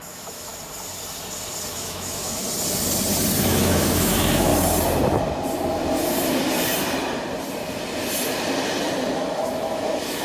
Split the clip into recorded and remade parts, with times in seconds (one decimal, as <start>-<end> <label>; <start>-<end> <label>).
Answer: 0.0-0.5 remade; 0.5-1.7 recorded; 1.7-2.4 remade; 2.4-3.4 recorded; 3.4-4.5 remade; 4.5-9.1 recorded; 9.1-10.2 remade